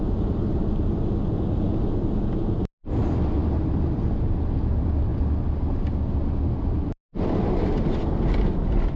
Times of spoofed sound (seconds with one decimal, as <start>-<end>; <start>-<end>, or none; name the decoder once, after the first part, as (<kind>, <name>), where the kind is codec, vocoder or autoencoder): none